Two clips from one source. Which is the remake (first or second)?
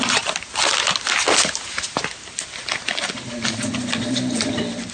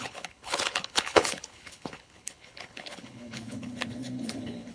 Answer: second